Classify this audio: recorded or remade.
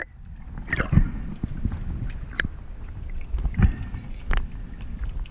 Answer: recorded